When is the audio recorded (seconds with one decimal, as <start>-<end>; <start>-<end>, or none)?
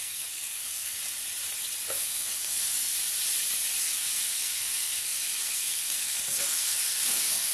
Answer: 1.0-1.9; 2.9-3.8